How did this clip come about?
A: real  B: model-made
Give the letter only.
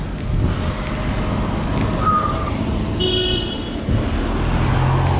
A